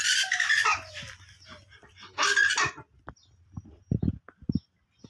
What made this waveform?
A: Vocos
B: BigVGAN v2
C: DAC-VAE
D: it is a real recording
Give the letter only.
D